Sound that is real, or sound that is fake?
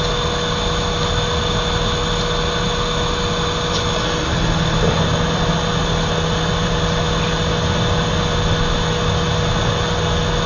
real